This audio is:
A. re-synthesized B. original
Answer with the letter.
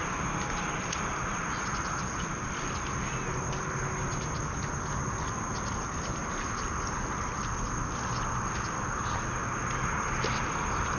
B